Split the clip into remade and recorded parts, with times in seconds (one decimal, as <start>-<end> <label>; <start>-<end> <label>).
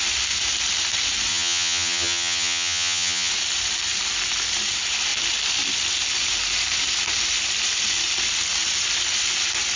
0.0-1.3 recorded; 1.3-3.3 remade; 3.3-9.8 recorded